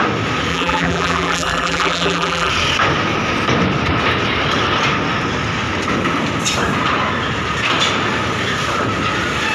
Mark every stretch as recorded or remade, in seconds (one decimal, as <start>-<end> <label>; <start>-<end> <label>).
0.0-0.5 recorded; 0.5-2.5 remade; 2.5-9.5 recorded